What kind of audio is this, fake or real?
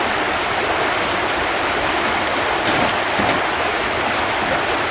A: real